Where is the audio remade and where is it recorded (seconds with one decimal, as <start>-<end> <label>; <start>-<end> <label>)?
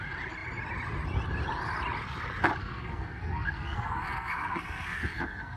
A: 0.0-2.6 recorded; 2.6-5.6 remade